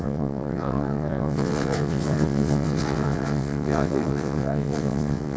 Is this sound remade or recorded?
remade